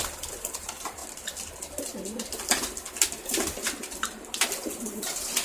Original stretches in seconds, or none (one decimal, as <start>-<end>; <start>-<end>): 1.0-3.6